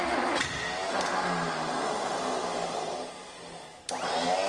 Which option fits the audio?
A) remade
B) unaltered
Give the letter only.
B